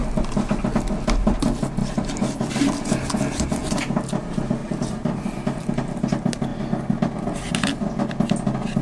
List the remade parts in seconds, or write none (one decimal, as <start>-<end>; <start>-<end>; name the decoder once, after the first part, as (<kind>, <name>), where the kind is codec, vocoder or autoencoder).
1.8-2.5 (vocoder, BigVGAN v2); 4.6-5.6